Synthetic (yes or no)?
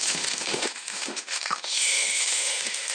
yes